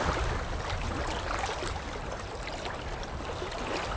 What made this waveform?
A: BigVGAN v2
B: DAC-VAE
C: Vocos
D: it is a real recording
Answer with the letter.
D